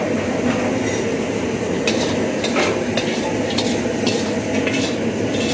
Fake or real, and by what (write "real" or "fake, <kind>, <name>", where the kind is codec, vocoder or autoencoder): real